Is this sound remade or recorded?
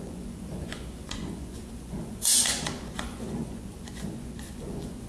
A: remade